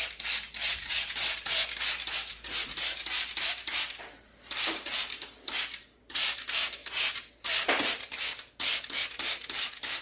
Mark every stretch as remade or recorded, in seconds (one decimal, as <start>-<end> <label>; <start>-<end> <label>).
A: 0.0-10.0 recorded